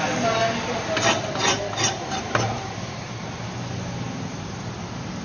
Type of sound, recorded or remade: remade